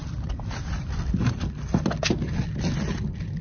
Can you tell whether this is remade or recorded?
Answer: recorded